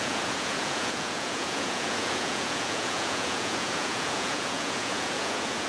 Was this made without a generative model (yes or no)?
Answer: no